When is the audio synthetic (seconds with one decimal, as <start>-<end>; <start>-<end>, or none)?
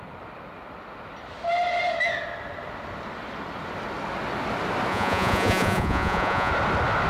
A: 4.9-6.5